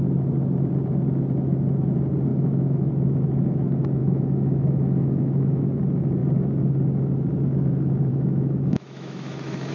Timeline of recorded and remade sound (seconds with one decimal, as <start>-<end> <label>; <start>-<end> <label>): 0.0-2.3 recorded; 2.3-2.9 remade; 2.9-4.0 recorded; 4.0-5.8 remade; 5.8-8.1 recorded; 8.1-9.7 remade